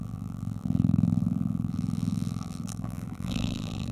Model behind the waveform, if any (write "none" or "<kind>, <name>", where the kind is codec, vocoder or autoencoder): vocoder, BigVGAN v2